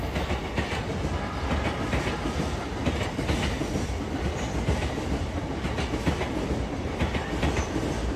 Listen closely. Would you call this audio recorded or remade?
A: recorded